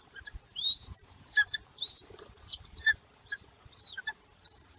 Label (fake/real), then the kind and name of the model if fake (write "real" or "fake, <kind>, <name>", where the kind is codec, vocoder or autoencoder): fake, vocoder, BigVGAN v2